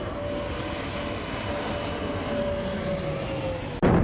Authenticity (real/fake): real